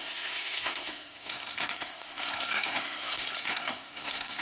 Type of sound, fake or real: fake